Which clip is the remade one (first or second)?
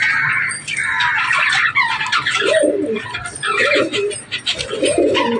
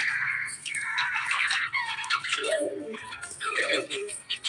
second